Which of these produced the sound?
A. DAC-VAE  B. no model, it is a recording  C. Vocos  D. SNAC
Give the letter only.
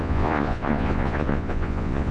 C